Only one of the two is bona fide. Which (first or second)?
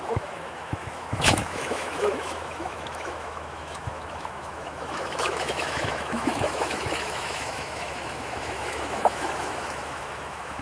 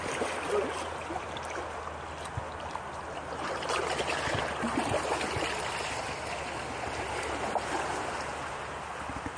second